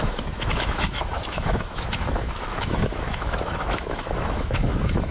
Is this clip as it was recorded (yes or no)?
no